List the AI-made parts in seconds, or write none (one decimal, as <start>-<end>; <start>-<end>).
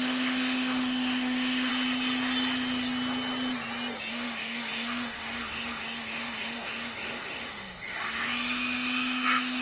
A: 0.0-1.7; 4.1-9.6